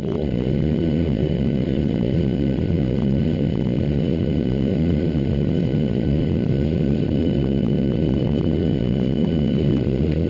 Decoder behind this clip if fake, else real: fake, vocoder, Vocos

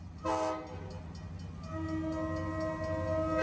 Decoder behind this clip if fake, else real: real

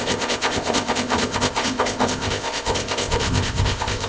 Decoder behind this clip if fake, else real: fake, codec, ZipCodec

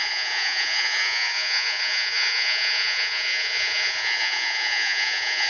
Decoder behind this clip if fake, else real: fake, vocoder, Vocos